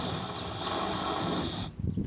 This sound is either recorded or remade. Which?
recorded